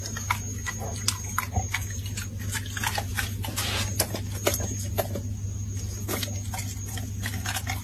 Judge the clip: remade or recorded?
recorded